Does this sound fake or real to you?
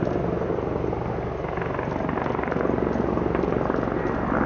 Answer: real